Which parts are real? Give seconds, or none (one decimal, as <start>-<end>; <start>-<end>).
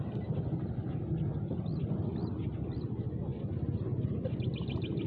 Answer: 0.0-5.1